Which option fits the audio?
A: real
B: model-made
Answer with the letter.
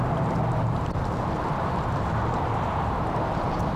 B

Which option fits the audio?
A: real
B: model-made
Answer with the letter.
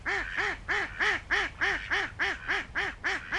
A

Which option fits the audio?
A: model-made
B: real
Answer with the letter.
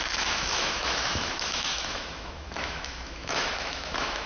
A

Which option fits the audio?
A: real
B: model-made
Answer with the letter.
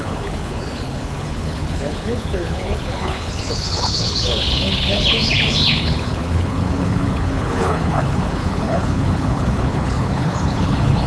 B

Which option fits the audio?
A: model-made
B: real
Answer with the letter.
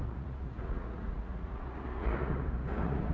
A